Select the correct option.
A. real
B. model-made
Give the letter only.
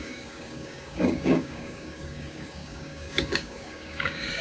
B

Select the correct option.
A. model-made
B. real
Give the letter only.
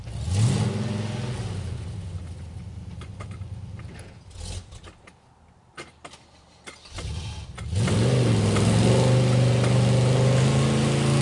B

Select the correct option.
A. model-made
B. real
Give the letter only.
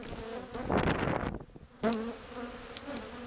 B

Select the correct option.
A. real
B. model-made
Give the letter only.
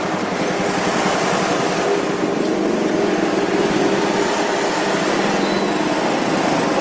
A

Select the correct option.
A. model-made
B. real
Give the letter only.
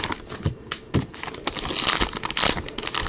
B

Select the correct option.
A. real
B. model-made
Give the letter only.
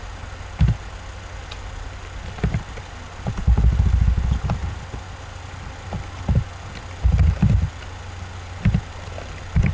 A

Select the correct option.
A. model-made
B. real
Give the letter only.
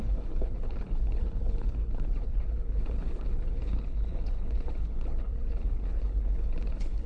A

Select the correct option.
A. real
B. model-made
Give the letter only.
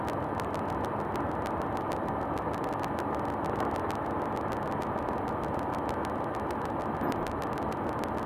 A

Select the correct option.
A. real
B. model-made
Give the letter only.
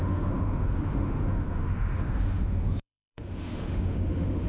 B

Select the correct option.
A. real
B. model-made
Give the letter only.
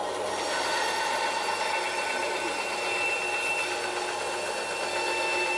A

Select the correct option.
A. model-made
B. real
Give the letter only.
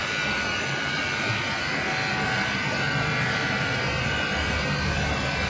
A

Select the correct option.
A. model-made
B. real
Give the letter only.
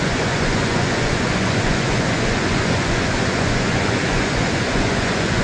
A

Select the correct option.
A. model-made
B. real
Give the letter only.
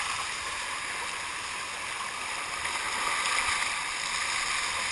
B